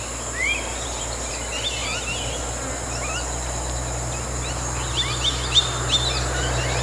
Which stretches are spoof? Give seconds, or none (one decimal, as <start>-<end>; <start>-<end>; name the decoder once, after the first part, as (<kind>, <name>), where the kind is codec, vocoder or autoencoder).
0.4-1.3 (vocoder, BigVGAN v2)